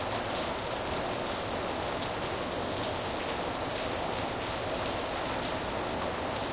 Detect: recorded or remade recorded